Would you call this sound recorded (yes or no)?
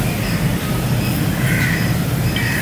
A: yes